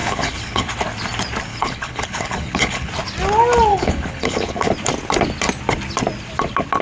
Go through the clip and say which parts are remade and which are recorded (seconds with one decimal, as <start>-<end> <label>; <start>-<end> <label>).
0.0-0.7 remade; 0.7-1.5 recorded; 1.5-2.9 remade; 2.9-3.7 recorded; 3.7-4.7 remade; 4.7-6.8 recorded